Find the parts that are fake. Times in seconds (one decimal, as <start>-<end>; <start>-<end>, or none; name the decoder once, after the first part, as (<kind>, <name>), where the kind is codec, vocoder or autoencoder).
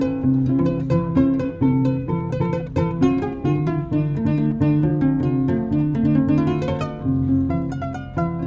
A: 0.0-4.9 (vocoder, BigVGAN v2)